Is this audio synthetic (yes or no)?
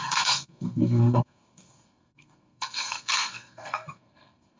yes